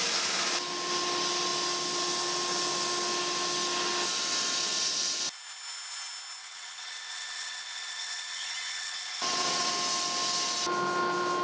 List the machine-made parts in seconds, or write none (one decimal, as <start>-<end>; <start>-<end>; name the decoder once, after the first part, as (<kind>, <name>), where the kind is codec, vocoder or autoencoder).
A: 6.4-9.7 (vocoder, WaveNeXt)